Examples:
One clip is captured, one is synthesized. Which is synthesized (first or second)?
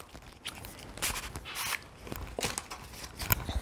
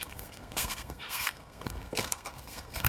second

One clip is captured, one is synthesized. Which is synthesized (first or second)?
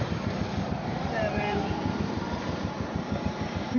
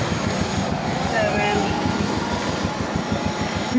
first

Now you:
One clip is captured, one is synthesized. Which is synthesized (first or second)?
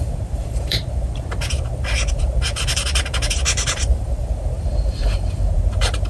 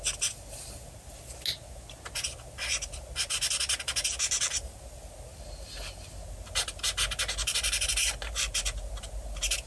first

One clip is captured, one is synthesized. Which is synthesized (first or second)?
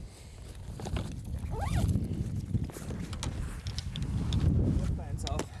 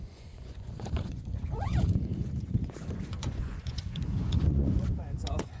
second